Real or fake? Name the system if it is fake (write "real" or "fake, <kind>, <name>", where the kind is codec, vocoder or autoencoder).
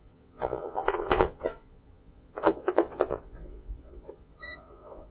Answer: fake, vocoder, Vocos